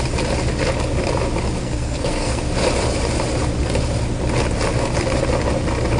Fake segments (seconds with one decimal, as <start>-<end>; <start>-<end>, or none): 1.6-2.4